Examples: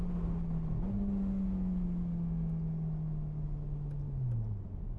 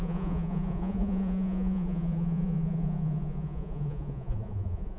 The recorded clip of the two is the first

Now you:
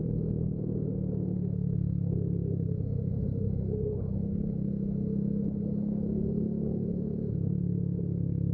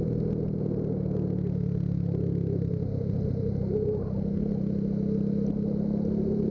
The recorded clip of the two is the second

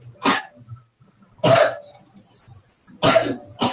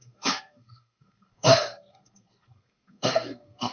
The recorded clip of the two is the first